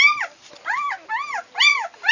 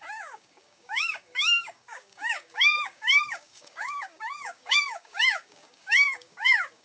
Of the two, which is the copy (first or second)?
second